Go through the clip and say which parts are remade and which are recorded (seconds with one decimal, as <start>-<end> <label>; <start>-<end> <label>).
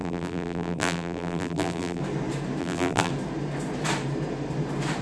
0.0-2.0 remade; 2.0-2.6 recorded; 2.6-3.1 remade; 3.1-5.0 recorded